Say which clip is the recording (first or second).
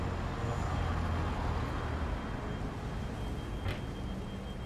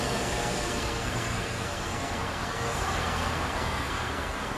first